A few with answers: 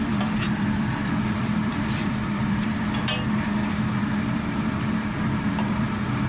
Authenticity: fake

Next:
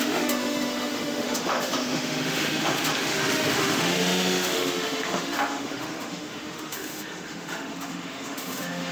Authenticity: fake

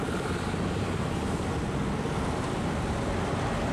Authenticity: real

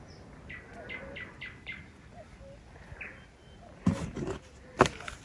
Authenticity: real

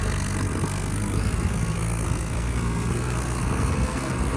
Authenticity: fake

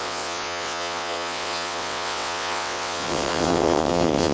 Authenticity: fake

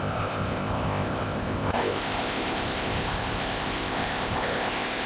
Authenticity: fake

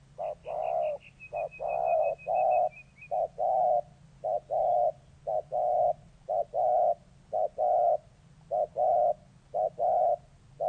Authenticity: real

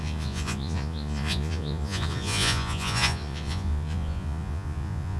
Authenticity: fake